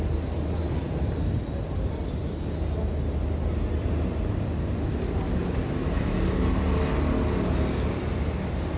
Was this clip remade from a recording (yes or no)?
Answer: no